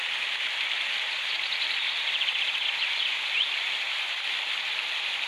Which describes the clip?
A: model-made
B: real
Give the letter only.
B